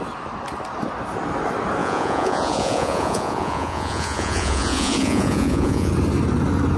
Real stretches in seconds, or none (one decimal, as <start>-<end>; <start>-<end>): 0.0-1.8; 5.9-6.8